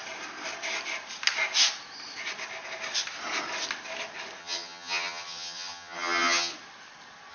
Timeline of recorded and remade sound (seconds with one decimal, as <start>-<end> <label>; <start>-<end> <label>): 0.0-4.4 recorded; 4.4-6.5 remade; 6.5-7.3 recorded